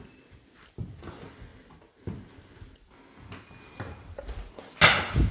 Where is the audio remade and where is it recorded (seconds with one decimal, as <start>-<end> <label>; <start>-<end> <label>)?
0.0-5.3 recorded

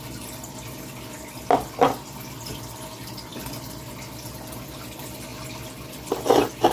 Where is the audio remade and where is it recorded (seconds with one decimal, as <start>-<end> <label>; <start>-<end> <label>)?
0.0-6.7 recorded